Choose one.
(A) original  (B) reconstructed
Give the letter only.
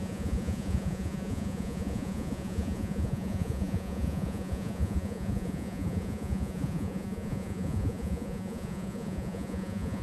B